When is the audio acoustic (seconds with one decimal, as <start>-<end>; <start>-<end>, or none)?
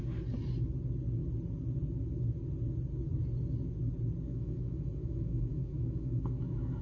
0.0-4.3